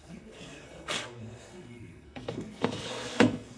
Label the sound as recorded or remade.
remade